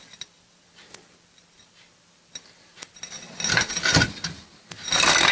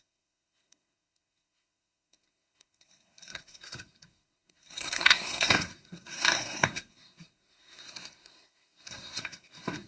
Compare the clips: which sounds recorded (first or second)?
first